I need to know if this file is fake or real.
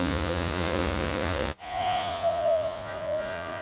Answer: fake